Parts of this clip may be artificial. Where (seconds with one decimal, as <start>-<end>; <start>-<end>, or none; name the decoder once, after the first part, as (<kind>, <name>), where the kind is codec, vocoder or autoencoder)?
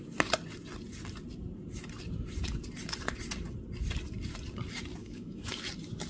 5.0-5.5 (autoencoder, DAC-VAE)